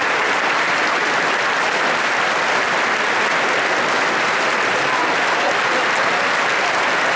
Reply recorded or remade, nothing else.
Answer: recorded